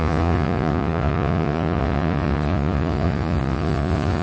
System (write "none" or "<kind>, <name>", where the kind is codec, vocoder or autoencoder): vocoder, Vocos